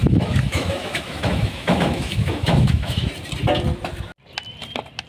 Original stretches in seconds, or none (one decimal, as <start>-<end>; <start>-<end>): 3.1-5.1

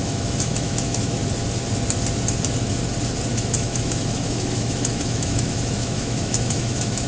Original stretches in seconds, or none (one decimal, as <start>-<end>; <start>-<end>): 1.2-3.3

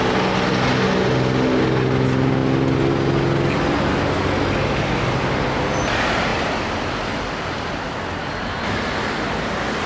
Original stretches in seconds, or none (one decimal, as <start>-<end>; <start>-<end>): 0.0-9.9